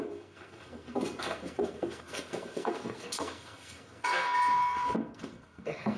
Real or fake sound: fake